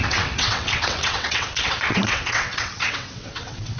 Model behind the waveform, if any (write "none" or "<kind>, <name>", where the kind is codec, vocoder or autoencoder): vocoder, WaveNeXt